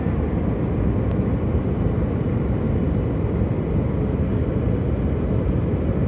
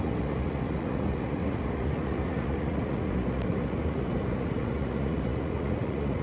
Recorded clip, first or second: first